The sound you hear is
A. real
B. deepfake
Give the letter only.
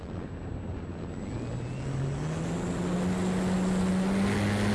A